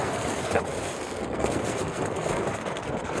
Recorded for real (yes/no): no